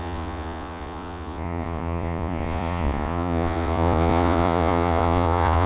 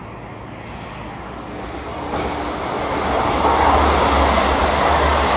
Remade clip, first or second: first